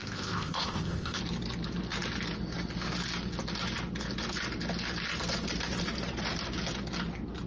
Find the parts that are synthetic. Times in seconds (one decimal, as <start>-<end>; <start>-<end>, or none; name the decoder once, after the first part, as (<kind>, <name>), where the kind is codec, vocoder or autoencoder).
0.0-1.2 (codec, ZipCodec)